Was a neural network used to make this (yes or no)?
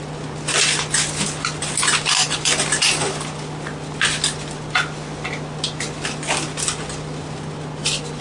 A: no